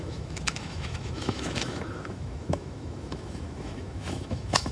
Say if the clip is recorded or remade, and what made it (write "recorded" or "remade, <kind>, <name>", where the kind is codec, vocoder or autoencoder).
remade, autoencoder, DAC-VAE